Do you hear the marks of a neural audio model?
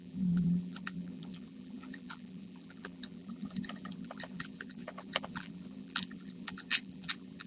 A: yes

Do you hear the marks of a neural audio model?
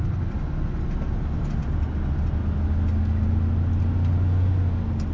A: no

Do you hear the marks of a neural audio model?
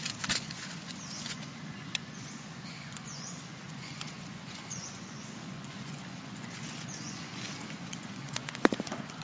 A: yes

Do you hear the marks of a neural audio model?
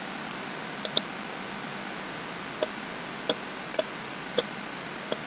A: no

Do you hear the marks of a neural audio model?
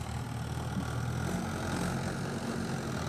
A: no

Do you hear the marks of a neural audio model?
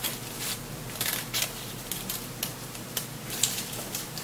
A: yes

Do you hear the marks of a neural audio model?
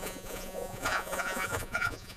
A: yes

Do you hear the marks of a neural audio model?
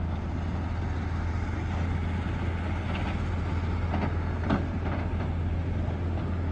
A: no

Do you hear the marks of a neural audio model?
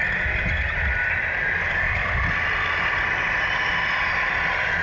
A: no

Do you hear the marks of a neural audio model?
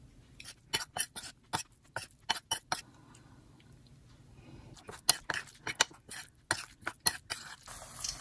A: no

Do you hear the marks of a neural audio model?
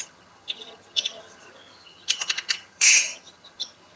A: yes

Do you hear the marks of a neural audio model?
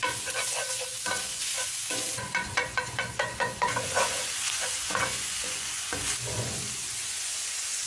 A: yes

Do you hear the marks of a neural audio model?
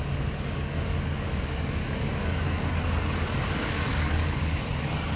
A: yes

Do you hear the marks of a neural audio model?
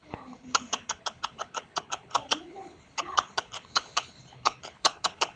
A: yes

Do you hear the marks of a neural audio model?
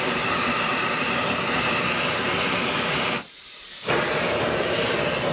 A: yes